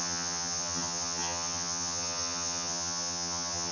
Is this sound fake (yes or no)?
yes